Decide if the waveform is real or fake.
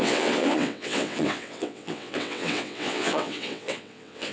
fake